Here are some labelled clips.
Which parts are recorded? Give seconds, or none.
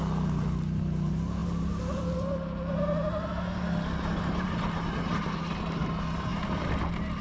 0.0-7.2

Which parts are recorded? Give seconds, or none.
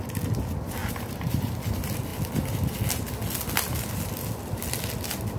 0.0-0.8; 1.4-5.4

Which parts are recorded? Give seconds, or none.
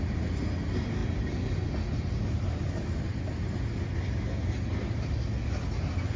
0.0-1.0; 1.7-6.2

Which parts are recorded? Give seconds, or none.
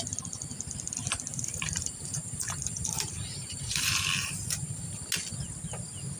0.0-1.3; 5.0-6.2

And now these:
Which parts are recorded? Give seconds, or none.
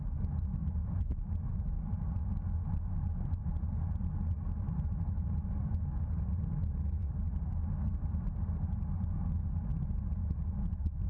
0.0-7.0; 8.7-11.1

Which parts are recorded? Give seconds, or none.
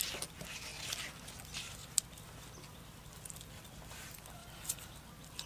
0.0-5.5